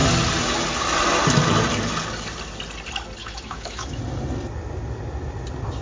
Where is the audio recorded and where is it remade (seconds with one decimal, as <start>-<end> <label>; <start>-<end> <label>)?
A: 0.0-3.2 recorded; 3.2-4.0 remade; 4.0-5.8 recorded